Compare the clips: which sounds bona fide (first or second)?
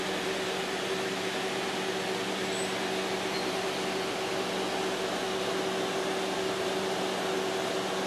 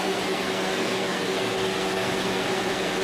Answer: first